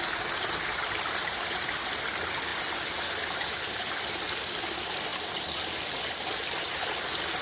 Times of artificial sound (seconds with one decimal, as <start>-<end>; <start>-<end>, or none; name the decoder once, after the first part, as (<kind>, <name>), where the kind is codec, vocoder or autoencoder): none